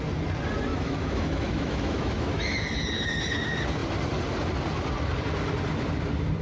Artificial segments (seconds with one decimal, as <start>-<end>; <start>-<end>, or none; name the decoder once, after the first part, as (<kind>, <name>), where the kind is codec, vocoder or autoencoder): 0.7-2.6 (autoencoder, DAC-VAE)